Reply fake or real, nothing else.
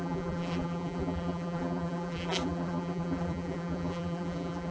fake